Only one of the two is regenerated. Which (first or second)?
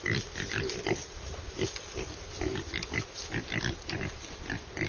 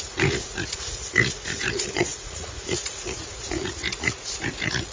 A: second